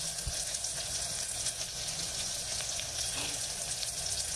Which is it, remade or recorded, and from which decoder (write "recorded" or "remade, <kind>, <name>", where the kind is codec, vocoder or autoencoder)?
remade, vocoder, Vocos